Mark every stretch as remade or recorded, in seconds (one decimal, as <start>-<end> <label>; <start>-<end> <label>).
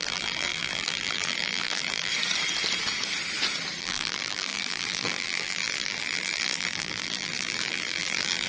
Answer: 0.0-2.1 remade; 2.1-3.8 recorded; 3.8-8.5 remade